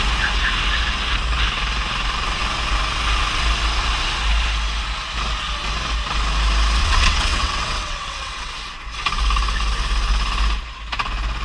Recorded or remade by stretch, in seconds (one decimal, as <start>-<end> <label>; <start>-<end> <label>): 0.0-6.8 recorded; 6.8-8.5 remade; 8.5-11.4 recorded